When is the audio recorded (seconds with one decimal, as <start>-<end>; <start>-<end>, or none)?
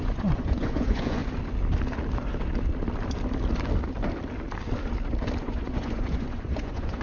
1.2-5.4